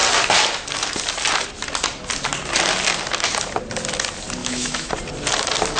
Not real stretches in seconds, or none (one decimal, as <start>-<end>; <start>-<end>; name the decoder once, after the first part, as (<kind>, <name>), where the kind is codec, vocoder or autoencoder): 4.4-4.9 (autoencoder, DAC-VAE)

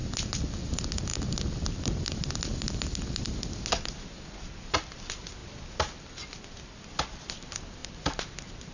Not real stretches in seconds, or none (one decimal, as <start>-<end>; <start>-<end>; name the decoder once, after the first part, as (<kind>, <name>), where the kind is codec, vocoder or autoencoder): none

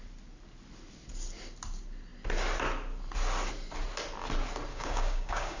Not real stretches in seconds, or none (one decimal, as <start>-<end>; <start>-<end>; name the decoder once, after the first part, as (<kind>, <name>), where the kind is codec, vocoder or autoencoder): 4.7-5.6 (codec, DAC)

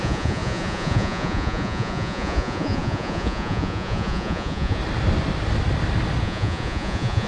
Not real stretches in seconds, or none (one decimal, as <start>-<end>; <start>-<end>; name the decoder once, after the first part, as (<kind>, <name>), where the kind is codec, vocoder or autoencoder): 0.0-4.8 (vocoder, Vocos); 6.2-7.3

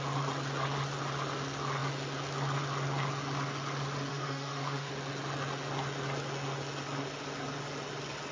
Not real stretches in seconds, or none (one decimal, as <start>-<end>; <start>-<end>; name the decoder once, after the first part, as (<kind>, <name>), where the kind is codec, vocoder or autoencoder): 4.1-4.9 (autoencoder, DAC-VAE)

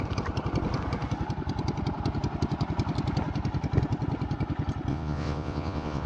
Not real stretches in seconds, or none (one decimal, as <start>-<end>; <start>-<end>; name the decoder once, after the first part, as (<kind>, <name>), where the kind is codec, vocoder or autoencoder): 4.9-6.1 (vocoder, Vocos)

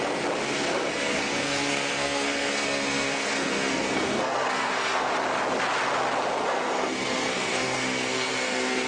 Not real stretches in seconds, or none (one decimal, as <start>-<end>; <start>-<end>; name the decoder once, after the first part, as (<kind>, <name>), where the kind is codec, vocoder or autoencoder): 0.7-5.1 (codec, SNAC); 6.4-8.9

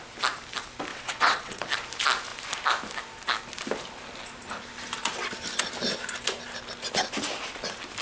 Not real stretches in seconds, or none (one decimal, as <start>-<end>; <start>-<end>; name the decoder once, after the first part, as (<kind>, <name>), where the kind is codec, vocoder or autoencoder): 0.9-1.6 (vocoder, WaveNeXt)